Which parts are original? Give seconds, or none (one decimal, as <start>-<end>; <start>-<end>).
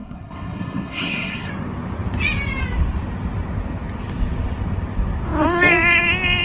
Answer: 1.5-6.4